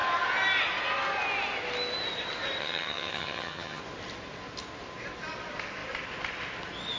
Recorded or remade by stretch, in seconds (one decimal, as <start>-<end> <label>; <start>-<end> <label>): 0.0-2.6 recorded; 2.6-3.8 remade; 3.8-7.0 recorded